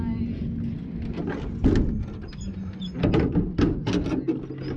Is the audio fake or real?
real